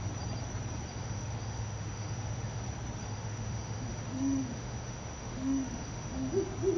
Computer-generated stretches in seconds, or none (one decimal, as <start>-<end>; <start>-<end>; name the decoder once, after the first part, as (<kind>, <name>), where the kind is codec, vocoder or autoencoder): 0.9-2.6 (autoencoder, DAC-VAE); 3.1-6.3